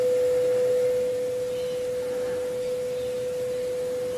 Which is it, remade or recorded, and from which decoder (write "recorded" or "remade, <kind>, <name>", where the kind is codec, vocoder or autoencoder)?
recorded